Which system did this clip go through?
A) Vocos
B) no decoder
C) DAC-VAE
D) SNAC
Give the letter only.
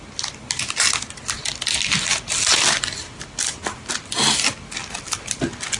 B